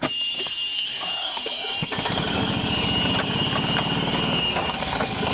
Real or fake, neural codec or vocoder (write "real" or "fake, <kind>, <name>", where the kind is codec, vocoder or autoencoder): fake, codec, DAC